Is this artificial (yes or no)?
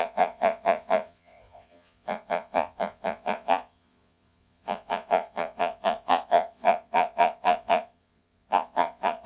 yes